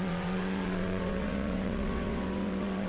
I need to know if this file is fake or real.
fake